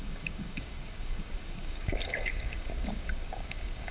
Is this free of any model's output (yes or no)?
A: no